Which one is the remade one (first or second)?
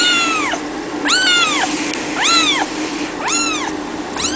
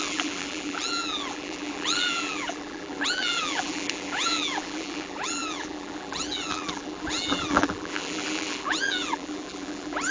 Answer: second